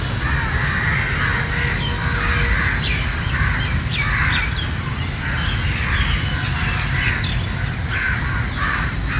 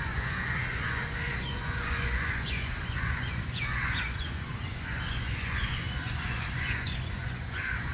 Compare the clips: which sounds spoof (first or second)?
second